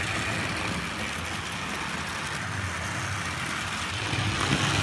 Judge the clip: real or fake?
real